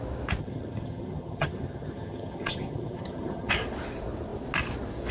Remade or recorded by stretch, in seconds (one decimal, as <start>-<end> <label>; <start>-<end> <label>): 0.0-0.4 recorded; 0.4-3.5 remade; 3.5-5.1 recorded